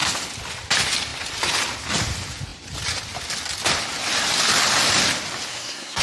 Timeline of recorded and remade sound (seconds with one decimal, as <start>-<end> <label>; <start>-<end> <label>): 0.0-5.5 recorded; 5.5-6.0 remade